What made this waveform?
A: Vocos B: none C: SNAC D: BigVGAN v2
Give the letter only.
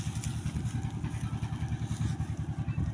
B